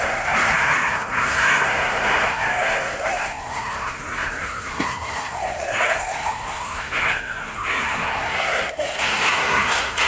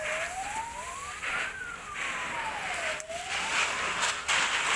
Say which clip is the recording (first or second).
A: second